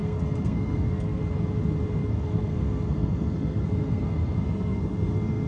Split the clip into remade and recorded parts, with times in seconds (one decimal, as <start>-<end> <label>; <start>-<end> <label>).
0.0-1.2 remade; 1.2-2.0 recorded; 2.0-5.5 remade